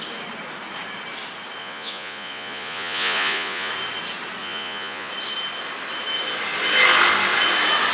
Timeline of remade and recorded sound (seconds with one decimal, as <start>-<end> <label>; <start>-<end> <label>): 0.0-1.6 recorded; 1.6-3.7 remade; 3.7-4.4 recorded; 4.4-5.1 remade; 5.1-7.9 recorded